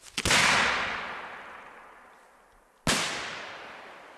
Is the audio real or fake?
real